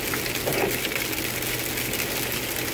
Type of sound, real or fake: real